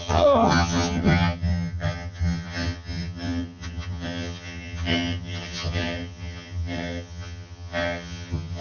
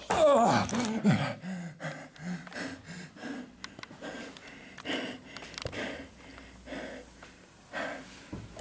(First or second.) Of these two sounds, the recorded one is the second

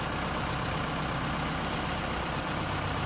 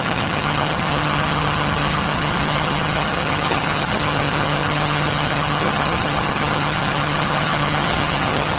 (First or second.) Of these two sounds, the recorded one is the first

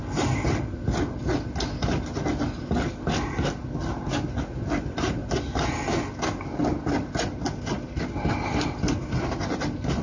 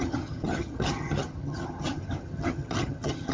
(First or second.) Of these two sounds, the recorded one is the first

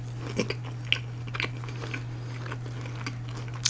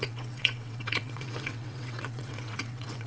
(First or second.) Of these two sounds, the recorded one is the first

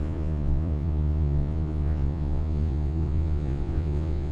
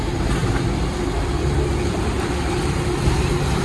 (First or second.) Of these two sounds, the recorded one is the second